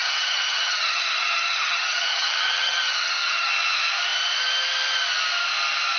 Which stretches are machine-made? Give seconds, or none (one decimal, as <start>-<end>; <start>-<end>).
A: 0.0-3.5